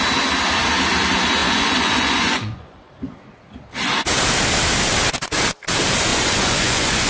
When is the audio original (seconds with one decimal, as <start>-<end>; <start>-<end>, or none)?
0.0-1.4; 2.9-6.1